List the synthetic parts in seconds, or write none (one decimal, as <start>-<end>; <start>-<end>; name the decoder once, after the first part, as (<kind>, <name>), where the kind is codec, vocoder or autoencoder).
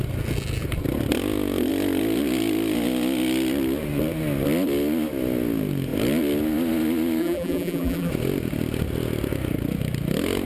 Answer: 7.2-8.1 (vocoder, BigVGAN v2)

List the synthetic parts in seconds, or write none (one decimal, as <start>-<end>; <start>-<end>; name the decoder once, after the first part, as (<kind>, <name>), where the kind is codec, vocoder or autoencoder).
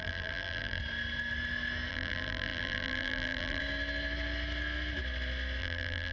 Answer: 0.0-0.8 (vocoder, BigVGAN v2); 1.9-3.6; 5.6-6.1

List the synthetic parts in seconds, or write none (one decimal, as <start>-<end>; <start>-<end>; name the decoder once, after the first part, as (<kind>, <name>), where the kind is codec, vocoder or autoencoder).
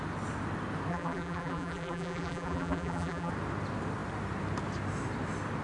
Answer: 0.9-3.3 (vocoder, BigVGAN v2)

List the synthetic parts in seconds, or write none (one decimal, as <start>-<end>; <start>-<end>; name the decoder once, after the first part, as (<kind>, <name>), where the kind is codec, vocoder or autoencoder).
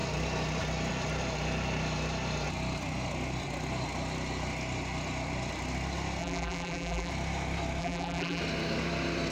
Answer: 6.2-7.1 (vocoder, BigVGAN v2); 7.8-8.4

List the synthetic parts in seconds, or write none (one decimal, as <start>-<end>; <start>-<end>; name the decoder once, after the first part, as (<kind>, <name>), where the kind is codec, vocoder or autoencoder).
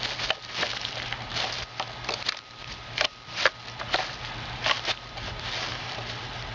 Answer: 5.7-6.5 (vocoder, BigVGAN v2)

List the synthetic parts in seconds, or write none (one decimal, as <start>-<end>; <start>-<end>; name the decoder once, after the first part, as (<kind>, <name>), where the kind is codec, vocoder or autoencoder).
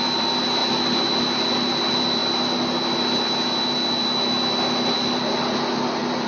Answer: none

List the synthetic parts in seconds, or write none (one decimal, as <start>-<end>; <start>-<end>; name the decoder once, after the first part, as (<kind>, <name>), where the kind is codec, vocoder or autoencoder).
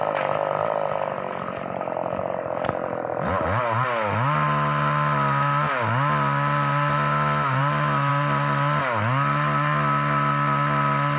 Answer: none